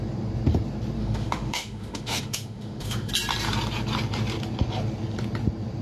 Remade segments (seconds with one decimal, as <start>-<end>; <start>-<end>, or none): 1.0-3.1